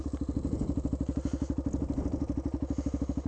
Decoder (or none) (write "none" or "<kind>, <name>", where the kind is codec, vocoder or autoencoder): none